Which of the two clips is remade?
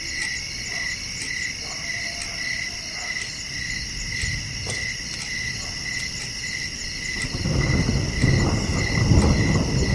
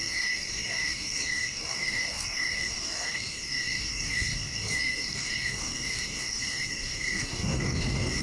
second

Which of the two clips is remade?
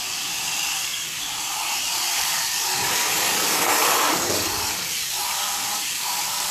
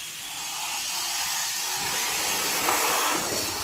first